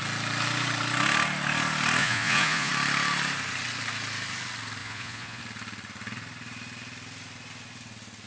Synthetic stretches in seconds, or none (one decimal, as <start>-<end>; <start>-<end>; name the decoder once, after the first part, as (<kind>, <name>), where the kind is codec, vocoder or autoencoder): 2.0-2.7 (vocoder, Vocos); 4.8-5.4

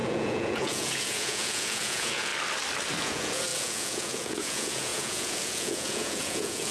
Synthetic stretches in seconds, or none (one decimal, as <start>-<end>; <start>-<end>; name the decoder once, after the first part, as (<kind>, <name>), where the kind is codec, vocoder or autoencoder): 0.0-2.3 (vocoder, Vocos); 3.0-6.7

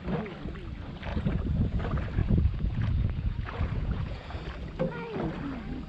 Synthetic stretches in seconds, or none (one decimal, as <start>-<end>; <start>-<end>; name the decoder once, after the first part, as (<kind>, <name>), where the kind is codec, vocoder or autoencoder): 1.1-1.8 (vocoder, Vocos); 2.2-4.4

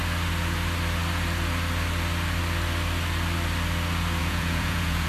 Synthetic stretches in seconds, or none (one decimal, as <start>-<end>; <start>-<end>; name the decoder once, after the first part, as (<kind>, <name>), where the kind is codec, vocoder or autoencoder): 4.2-5.1 (vocoder, Vocos)

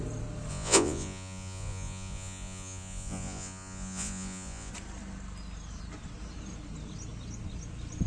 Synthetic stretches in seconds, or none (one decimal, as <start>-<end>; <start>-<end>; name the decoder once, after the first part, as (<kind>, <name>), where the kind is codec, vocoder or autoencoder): 0.5-4.7 (vocoder, Vocos)

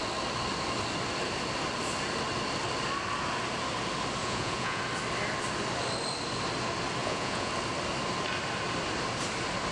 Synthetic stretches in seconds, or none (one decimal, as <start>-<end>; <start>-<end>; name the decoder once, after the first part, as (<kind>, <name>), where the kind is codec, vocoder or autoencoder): 4.2-4.8 (vocoder, Vocos); 7.0-7.5

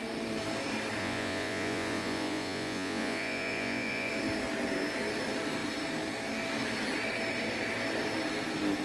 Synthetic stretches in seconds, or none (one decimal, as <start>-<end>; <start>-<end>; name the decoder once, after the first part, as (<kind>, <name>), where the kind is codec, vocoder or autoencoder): 1.0-4.1 (vocoder, Vocos)